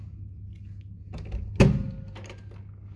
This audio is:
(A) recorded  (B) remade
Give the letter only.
A